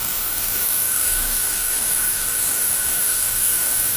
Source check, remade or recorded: remade